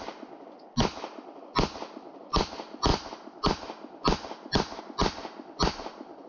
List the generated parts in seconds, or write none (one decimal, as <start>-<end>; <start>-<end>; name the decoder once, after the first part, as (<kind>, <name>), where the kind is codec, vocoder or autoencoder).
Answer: none